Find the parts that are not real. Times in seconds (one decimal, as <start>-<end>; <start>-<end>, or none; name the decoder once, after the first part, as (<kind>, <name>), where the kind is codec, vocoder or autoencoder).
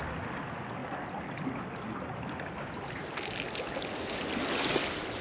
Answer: none